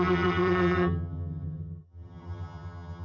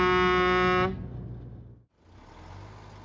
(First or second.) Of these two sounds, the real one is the second